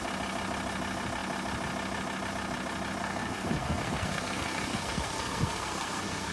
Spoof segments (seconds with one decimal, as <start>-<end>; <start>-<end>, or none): 3.0-6.3